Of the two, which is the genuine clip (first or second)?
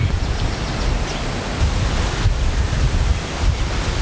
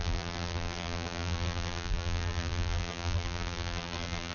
first